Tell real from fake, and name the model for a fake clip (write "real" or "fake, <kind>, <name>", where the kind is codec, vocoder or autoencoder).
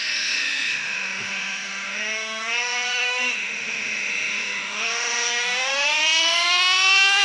fake, autoencoder, DAC-VAE